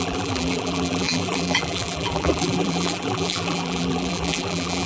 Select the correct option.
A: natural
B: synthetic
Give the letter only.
B